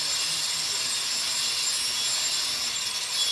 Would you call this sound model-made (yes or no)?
no